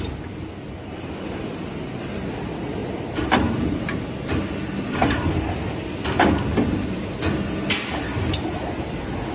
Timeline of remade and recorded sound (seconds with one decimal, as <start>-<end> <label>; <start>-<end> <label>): 0.0-9.3 recorded